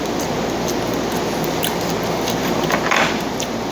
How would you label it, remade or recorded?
recorded